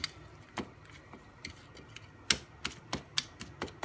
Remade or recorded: recorded